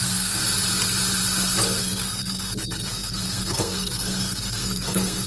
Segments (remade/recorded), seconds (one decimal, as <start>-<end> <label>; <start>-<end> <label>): 0.0-0.4 remade; 0.4-1.8 recorded; 1.8-5.3 remade